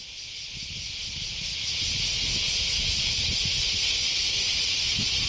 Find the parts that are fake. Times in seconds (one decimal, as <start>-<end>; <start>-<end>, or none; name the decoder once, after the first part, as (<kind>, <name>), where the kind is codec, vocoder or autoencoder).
none